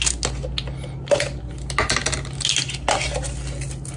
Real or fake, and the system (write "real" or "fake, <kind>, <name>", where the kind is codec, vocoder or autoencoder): real